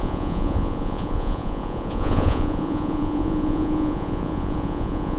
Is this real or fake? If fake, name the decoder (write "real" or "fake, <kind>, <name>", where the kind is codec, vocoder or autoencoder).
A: fake, vocoder, Vocos